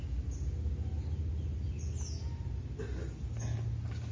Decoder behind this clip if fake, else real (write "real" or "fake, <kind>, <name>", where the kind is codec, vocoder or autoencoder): real